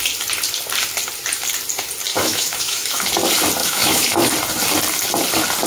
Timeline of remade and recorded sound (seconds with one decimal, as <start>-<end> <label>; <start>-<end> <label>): 0.0-2.1 recorded; 2.1-3.1 remade; 3.1-3.6 recorded; 3.6-4.3 remade; 4.3-5.7 recorded